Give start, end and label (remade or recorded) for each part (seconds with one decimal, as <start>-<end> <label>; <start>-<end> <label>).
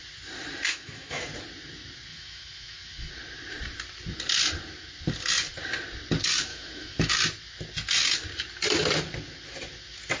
0.0-0.7 recorded; 0.7-1.2 remade; 1.2-2.1 recorded; 2.1-3.1 remade; 3.1-6.5 recorded; 6.5-7.1 remade; 7.1-10.2 recorded